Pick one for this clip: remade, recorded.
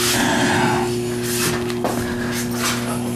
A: recorded